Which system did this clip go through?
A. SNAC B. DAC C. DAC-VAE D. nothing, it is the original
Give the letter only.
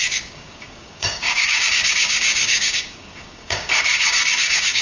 B